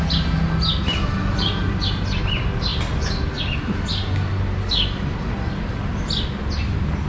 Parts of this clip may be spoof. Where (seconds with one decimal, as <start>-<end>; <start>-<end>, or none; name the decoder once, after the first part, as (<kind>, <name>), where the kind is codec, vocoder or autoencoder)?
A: none